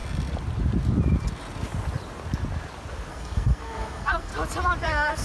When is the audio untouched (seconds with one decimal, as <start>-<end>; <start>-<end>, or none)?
0.0-3.1; 4.3-4.8